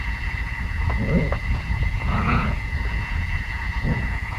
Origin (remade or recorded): remade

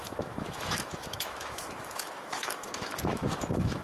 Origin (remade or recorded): remade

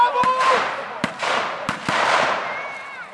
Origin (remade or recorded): remade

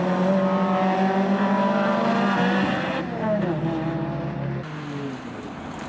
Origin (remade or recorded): recorded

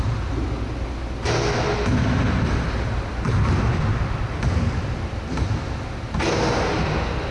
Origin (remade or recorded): recorded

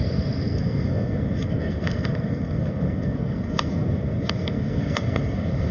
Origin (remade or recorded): remade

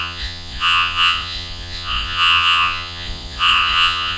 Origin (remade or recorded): remade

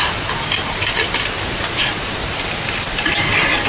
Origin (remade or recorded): recorded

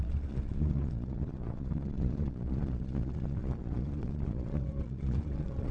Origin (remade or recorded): remade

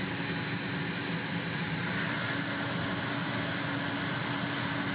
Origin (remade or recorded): recorded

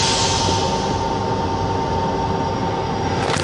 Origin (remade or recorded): recorded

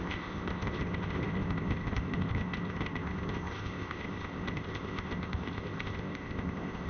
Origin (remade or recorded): remade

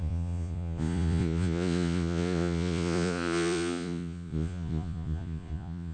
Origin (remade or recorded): remade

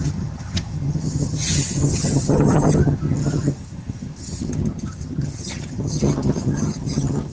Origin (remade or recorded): remade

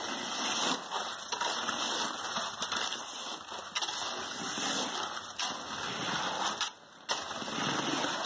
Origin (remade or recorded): recorded